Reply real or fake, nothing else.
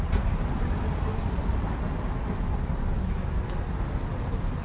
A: real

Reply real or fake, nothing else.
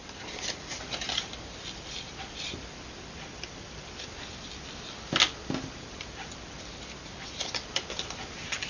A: real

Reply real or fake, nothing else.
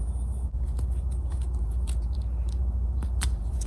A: fake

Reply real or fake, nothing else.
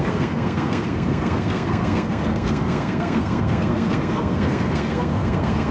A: fake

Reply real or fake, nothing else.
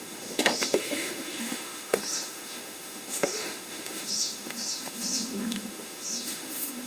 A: fake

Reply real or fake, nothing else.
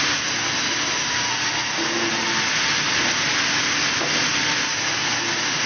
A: real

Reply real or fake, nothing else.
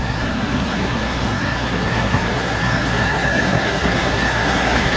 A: fake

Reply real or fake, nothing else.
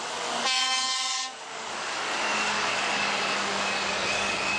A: fake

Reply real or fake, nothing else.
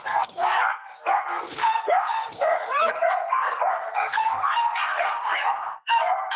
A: fake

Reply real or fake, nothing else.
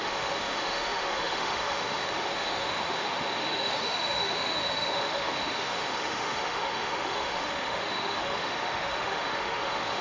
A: fake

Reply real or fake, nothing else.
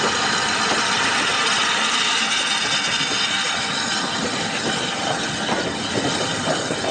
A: real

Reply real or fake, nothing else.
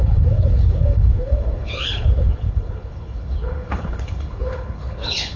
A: fake